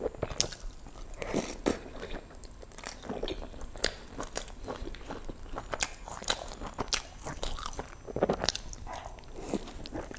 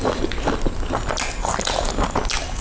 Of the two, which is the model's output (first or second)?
first